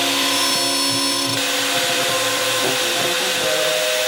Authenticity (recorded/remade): recorded